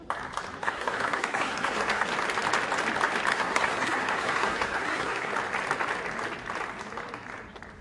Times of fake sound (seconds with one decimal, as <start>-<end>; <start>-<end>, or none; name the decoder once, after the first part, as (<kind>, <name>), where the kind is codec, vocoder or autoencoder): 0.6-2.0 (codec, SNAC); 3.3-5.3